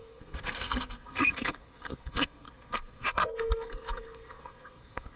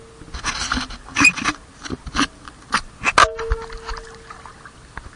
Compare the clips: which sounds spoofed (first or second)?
first